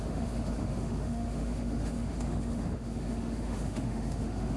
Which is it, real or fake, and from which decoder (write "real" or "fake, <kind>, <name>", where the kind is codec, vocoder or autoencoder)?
fake, autoencoder, DAC-VAE